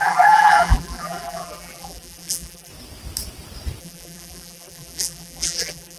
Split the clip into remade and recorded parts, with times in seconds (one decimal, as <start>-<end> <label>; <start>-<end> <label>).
0.0-2.7 remade; 2.7-3.8 recorded; 3.8-6.0 remade